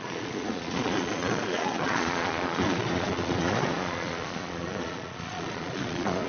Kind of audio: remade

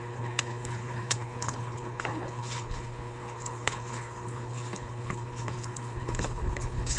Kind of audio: remade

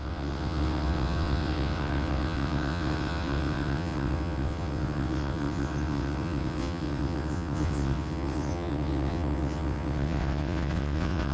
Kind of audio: remade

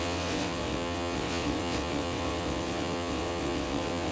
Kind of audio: remade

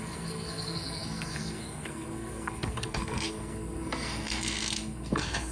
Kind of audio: remade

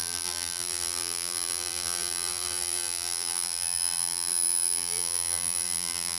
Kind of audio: remade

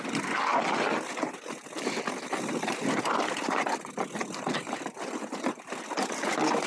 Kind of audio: recorded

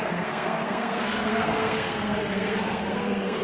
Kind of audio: remade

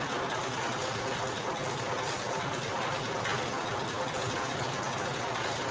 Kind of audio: recorded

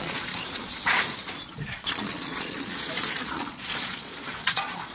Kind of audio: remade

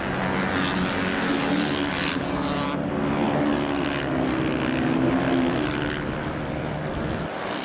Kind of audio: recorded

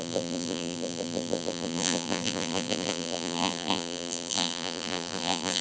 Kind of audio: remade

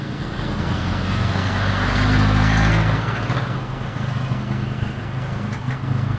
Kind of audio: remade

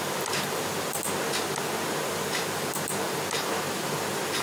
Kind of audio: recorded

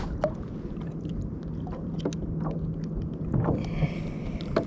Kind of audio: recorded